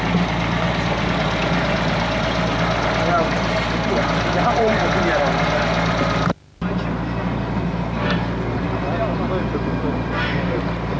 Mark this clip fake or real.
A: real